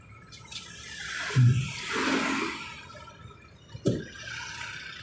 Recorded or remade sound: remade